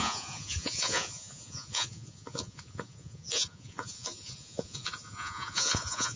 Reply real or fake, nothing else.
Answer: fake